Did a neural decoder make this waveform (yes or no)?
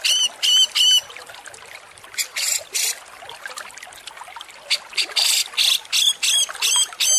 no